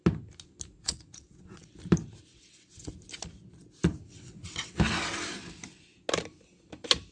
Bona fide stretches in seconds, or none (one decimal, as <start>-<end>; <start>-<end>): 0.0-0.8; 1.7-2.3; 2.9-4.1; 4.8-7.1